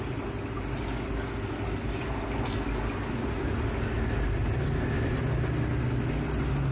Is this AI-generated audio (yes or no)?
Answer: no